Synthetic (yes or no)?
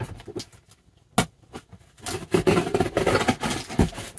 no